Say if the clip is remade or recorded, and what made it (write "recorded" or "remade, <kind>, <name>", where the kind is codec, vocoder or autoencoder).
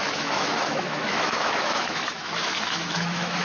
remade, autoencoder, DAC-VAE